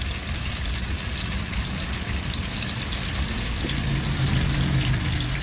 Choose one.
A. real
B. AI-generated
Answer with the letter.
A